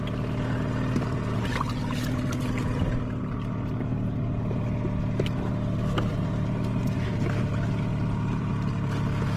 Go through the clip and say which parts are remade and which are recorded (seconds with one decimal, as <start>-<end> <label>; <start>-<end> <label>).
0.0-6.1 recorded; 6.1-6.8 remade; 6.8-7.9 recorded; 7.9-8.5 remade; 8.5-9.4 recorded